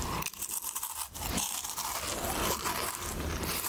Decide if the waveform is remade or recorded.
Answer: recorded